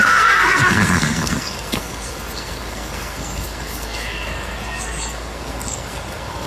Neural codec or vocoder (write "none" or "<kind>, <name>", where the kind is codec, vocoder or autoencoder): codec, SNAC